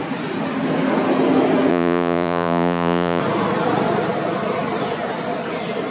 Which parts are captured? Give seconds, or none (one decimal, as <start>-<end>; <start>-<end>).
0.0-1.7; 3.2-5.9